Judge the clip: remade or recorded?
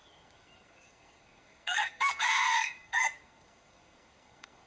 remade